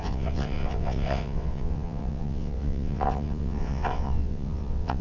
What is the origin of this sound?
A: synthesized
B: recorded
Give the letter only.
A